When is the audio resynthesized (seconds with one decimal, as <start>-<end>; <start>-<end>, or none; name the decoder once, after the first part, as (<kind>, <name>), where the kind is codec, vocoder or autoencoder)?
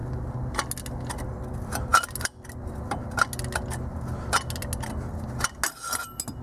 none